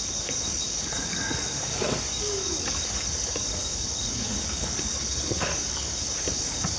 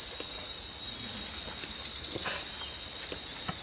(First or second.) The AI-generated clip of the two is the first